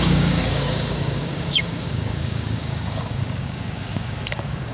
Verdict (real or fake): fake